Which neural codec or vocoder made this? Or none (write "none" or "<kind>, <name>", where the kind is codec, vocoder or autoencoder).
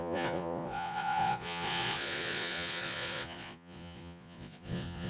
vocoder, Vocos